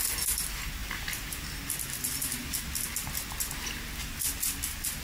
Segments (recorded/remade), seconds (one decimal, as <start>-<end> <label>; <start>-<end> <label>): 0.0-5.0 recorded